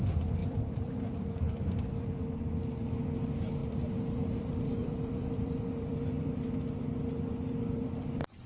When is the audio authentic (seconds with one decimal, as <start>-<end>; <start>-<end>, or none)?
0.0-0.4; 2.2-3.6; 6.5-8.5